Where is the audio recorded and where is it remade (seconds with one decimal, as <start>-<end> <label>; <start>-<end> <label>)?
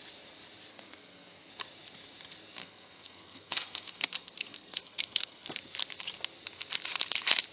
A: 0.0-0.7 recorded; 0.7-1.5 remade; 1.5-2.6 recorded; 2.6-5.5 remade; 5.5-7.5 recorded